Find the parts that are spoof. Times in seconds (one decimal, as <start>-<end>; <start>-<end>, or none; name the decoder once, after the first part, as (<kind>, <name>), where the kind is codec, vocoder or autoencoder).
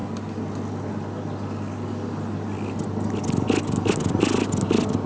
none